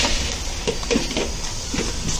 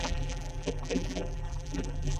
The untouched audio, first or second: first